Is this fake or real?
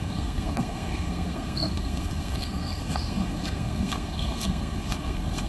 fake